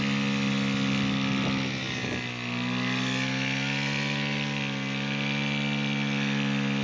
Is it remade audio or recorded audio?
recorded